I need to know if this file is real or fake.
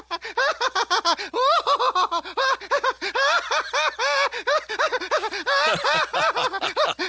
real